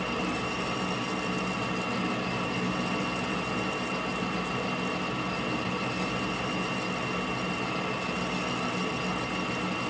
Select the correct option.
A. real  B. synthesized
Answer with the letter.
A